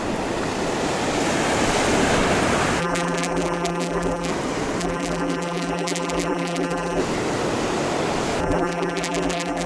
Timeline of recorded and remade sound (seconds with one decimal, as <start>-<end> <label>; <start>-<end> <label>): 0.0-2.8 recorded; 2.8-4.3 remade; 4.3-4.8 recorded; 4.8-7.0 remade; 7.0-8.4 recorded; 8.4-9.7 remade

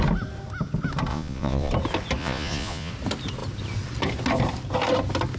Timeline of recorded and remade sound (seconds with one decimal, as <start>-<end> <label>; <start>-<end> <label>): 0.0-1.1 recorded; 1.1-1.7 remade; 1.7-2.2 recorded; 2.2-2.9 remade; 2.9-5.4 recorded

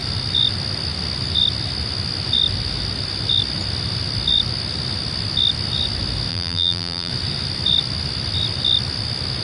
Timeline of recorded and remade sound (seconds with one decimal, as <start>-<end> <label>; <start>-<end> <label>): 0.0-6.3 recorded; 6.3-7.1 remade; 7.1-9.4 recorded

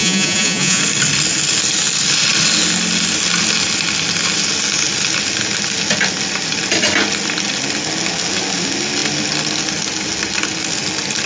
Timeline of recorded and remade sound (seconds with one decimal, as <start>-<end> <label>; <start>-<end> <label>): 0.0-0.8 remade; 0.8-11.3 recorded

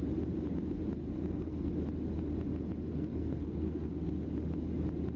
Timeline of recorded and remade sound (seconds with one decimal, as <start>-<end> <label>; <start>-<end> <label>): 0.0-1.2 recorded; 1.2-1.7 remade; 1.7-2.9 recorded; 2.9-4.1 remade; 4.1-5.2 recorded